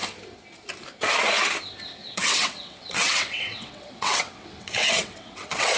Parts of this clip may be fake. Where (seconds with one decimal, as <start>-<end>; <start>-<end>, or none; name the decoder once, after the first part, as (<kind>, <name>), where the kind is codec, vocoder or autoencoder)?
2.0-5.8 (vocoder, WaveNeXt)